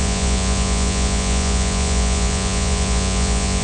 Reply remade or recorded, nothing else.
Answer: remade